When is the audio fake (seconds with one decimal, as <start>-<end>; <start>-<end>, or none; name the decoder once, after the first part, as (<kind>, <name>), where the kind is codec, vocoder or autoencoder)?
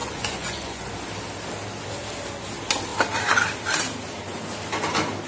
0.0-0.9 (vocoder, Vocos)